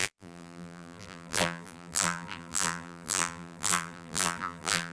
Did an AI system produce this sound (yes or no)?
yes